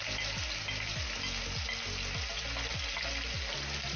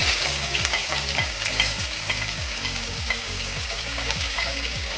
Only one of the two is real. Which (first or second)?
first